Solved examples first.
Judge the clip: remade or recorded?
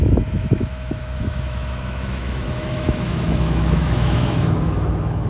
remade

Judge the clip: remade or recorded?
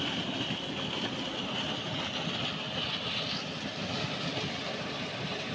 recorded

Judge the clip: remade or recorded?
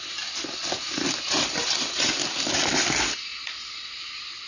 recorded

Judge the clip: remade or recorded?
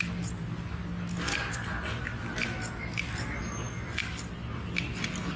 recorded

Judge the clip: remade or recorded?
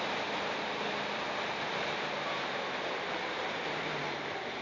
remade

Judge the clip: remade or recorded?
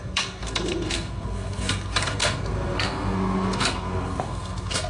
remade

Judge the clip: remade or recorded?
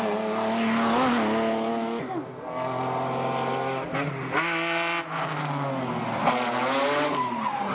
recorded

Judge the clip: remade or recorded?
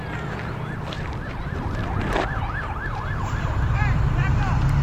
remade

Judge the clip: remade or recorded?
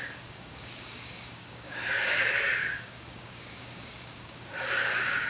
remade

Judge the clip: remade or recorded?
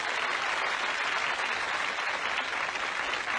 recorded